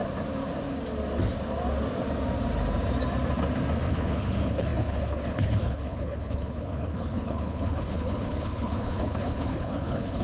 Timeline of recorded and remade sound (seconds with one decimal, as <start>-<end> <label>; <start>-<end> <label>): 0.0-3.9 recorded; 3.9-10.2 remade